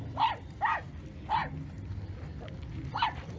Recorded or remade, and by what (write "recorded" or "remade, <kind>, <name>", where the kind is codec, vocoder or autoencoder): recorded